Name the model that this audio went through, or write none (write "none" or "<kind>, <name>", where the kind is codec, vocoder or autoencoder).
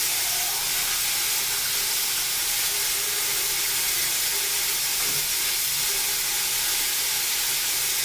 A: none